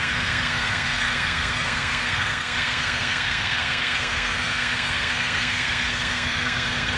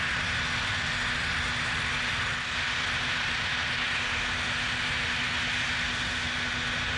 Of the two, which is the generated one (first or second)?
first